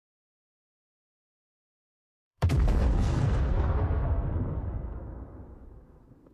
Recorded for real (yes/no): no